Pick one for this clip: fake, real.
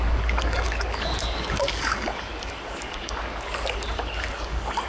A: fake